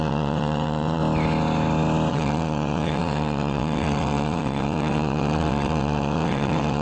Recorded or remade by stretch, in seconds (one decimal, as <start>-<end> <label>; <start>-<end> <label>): 0.0-1.0 remade; 1.0-2.1 recorded; 2.1-6.8 remade